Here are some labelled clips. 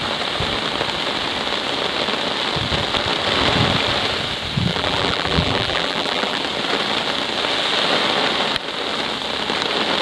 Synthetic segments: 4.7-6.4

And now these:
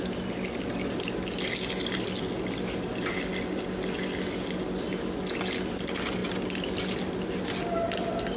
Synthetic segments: none

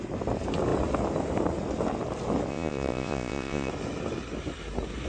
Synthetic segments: 2.5-3.7

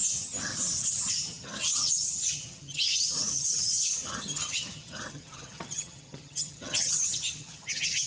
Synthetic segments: 0.0-0.5; 1.0-8.1

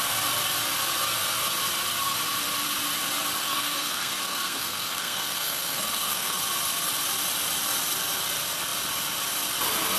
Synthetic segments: 3.4-6.4